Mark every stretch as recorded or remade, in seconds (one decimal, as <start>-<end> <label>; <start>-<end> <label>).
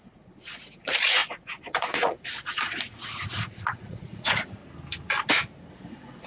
0.0-4.6 remade; 4.6-5.7 recorded; 5.7-6.3 remade